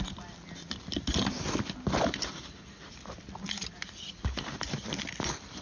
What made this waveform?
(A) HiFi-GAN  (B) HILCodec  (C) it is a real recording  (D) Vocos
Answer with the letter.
C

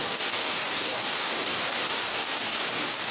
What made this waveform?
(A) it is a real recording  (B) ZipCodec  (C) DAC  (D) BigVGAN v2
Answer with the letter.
C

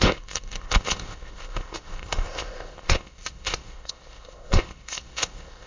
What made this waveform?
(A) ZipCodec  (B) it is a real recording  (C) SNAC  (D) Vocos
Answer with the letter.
A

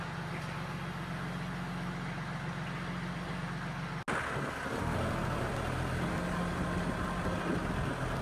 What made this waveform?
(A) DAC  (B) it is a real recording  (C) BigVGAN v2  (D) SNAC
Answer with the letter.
B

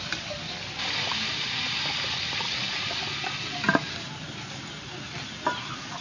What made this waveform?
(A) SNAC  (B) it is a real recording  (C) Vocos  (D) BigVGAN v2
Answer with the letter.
B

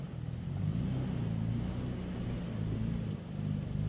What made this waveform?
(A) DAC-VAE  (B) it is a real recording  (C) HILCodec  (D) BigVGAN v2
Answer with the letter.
B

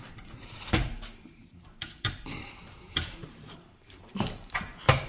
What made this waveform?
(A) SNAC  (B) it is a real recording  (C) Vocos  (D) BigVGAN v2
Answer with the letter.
D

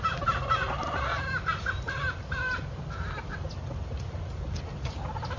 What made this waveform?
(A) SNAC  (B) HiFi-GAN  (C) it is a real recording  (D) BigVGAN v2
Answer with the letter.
C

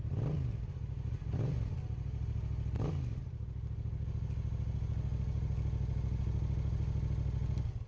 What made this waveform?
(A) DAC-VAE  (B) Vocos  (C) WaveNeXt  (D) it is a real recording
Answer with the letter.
D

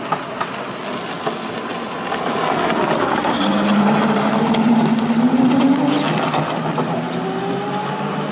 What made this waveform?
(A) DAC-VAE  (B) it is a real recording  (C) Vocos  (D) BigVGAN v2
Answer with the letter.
B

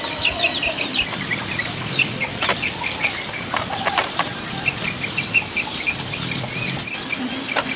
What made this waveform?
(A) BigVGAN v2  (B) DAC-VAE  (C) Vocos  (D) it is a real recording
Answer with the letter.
D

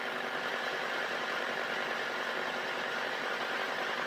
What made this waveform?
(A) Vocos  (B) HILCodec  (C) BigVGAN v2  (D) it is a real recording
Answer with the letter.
C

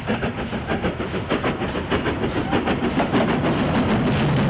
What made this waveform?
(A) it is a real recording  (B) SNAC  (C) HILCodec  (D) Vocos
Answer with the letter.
A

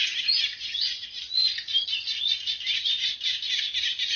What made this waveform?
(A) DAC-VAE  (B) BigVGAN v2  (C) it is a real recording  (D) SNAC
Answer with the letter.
C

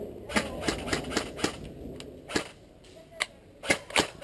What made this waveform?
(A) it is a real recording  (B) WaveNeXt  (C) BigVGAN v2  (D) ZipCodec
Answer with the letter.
A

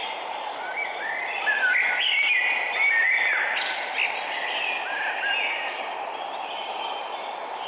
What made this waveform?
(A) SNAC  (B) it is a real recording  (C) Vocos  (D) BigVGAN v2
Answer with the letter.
B